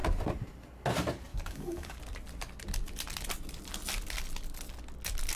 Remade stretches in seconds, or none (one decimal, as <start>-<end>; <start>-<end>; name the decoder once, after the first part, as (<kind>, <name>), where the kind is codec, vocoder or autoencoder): 1.3-2.0 (codec, DAC)